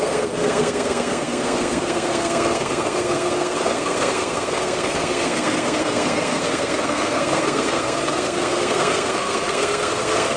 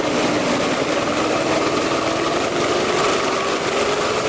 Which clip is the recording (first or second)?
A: second